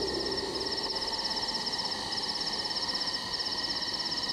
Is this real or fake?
real